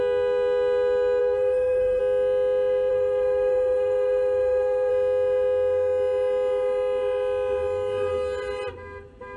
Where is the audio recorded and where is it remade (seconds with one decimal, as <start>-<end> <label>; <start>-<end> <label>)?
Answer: 0.0-1.2 recorded; 1.2-2.0 remade; 2.0-2.9 recorded; 2.9-4.9 remade; 4.9-9.4 recorded